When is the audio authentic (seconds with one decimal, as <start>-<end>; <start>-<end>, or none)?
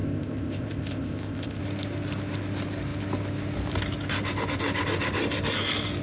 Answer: 1.6-6.0